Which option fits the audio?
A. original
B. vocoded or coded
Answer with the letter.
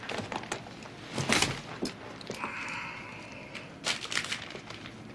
A